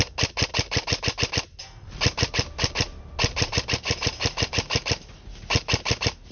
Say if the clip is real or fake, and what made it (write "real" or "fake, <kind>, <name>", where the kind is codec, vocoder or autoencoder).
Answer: real